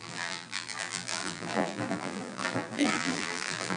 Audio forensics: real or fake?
fake